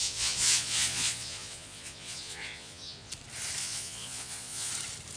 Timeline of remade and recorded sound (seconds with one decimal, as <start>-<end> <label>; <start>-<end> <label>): 0.0-3.1 remade; 3.1-3.6 recorded; 3.6-4.7 remade; 4.7-5.2 recorded